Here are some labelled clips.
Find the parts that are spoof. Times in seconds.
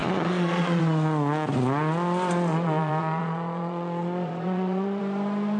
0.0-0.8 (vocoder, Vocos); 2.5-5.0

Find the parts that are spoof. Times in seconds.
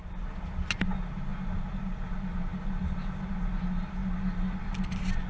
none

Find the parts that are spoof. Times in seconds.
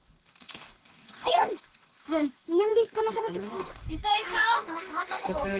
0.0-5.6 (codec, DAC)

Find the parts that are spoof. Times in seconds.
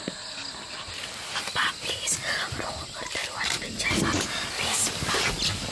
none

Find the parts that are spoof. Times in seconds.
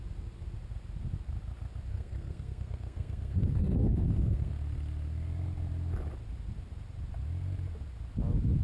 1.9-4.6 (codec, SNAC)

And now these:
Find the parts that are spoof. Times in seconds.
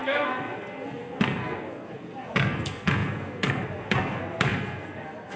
0.0-5.4 (codec, SNAC)